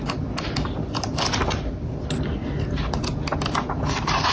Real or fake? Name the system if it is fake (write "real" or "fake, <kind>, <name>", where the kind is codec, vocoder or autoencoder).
real